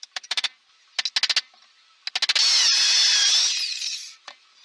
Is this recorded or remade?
recorded